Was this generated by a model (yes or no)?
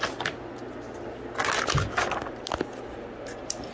no